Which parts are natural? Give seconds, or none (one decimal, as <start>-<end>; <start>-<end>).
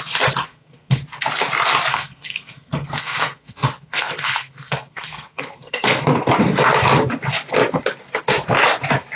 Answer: 0.0-0.4; 1.0-1.9; 6.3-9.2